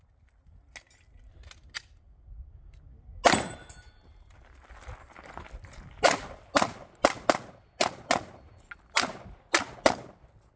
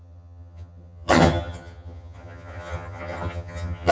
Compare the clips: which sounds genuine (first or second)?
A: first